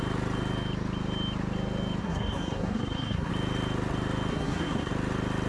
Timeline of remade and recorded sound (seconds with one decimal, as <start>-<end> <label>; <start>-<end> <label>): 0.0-2.0 recorded; 2.0-3.3 remade; 3.3-4.3 recorded; 4.3-4.9 remade; 4.9-5.5 recorded